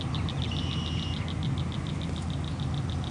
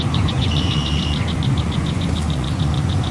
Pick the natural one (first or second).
first